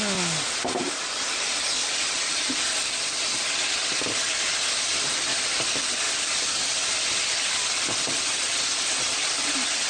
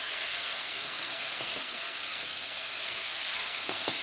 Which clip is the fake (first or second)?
second